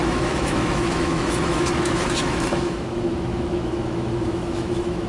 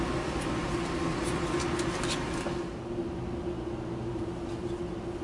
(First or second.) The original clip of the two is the second